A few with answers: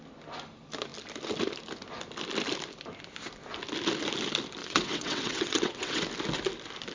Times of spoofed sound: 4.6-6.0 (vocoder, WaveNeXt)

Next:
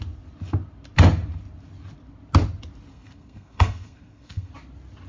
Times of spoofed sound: 2.9-4.5 (codec, SNAC)

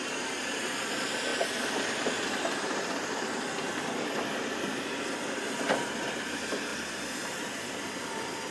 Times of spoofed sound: none